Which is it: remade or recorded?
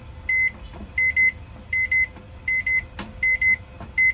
recorded